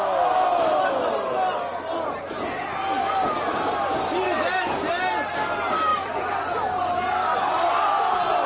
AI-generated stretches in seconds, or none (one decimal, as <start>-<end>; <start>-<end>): none

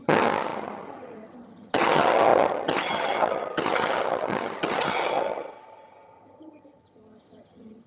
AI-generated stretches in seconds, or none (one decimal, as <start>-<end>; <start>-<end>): 0.0-7.9

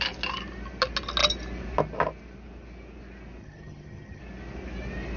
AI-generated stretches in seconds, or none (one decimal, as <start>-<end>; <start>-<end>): 3.4-4.2

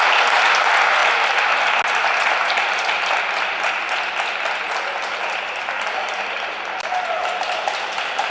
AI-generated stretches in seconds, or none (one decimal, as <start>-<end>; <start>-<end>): none

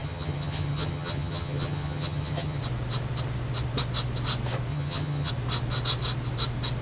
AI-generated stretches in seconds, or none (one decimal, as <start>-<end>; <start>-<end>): 0.0-2.6; 4.7-5.3

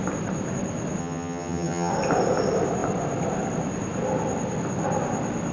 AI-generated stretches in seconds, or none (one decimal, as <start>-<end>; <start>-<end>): 1.0-1.9

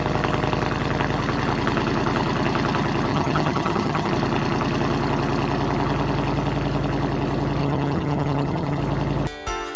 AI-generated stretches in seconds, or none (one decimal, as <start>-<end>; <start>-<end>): 3.1-4.1; 7.6-8.8